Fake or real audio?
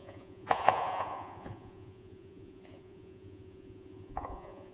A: fake